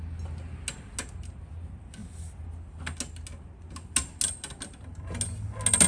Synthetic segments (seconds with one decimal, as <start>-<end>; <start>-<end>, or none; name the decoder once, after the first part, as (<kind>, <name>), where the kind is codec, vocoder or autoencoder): none